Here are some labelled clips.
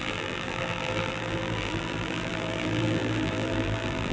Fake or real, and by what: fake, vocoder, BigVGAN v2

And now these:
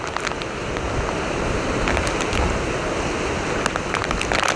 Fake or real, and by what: real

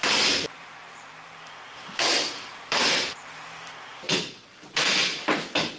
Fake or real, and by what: fake, vocoder, BigVGAN v2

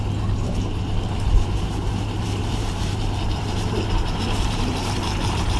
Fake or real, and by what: fake, vocoder, BigVGAN v2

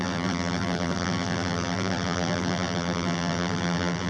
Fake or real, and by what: fake, vocoder, BigVGAN v2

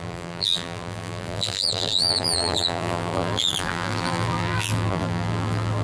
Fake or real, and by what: fake, vocoder, BigVGAN v2